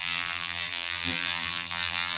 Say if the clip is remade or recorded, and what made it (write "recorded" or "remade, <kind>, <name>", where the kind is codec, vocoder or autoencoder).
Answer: remade, vocoder, BigVGAN v2